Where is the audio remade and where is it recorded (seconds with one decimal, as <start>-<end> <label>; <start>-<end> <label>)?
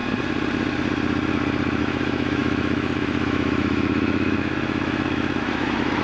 0.0-1.8 recorded; 1.8-6.0 remade